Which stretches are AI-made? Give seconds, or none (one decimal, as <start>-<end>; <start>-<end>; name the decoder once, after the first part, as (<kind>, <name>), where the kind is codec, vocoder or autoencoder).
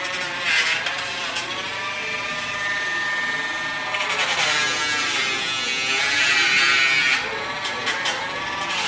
none